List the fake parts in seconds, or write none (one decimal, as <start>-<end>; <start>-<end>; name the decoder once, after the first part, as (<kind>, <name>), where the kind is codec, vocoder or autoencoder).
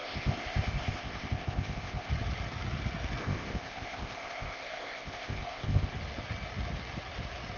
0.0-2.1 (codec, ZipCodec); 3.2-5.9